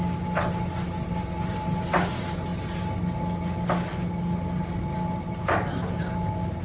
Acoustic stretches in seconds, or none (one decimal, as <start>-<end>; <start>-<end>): 0.0-6.6